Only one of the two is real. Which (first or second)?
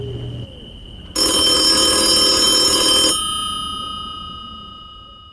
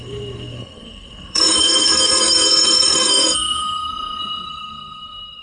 first